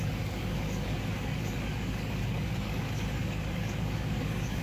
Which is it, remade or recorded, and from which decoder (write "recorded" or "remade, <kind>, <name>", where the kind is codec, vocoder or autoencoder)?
remade, codec, DAC